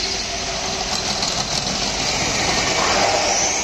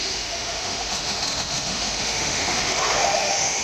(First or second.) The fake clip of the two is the second